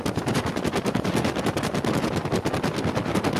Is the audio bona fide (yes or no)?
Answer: yes